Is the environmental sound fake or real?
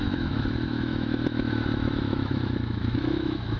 fake